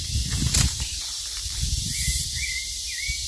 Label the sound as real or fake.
fake